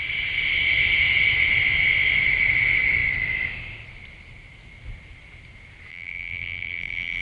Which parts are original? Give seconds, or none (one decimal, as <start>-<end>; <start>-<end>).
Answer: 0.0-5.9